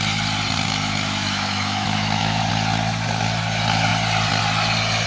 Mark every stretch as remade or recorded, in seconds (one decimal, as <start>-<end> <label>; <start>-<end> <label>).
0.0-0.8 recorded; 0.8-2.4 remade; 2.4-5.1 recorded